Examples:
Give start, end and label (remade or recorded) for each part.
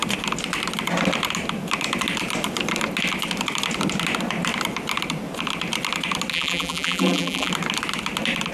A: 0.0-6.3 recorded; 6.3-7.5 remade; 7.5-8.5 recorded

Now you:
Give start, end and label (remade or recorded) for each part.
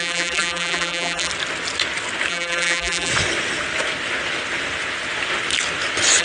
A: 0.0-1.3 remade; 1.3-2.3 recorded; 2.3-3.1 remade; 3.1-6.2 recorded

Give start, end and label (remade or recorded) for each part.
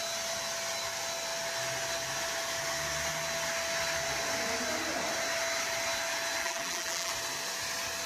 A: 0.0-6.4 recorded; 6.4-7.1 remade; 7.1-8.1 recorded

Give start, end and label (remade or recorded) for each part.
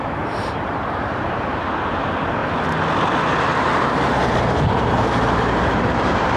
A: 0.0-2.4 remade; 2.4-3.6 recorded; 3.6-6.4 remade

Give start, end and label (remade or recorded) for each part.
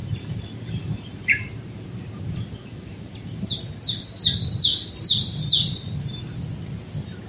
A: 0.0-1.6 remade; 1.6-2.6 recorded; 2.6-4.2 remade; 4.2-4.7 recorded; 4.7-6.2 remade; 6.2-7.3 recorded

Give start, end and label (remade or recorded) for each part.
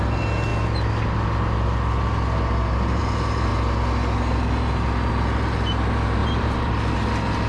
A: 0.0-6.2 recorded; 6.2-6.7 remade; 6.7-7.5 recorded